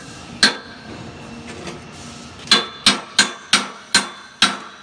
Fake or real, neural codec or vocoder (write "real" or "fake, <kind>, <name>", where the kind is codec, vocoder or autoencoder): real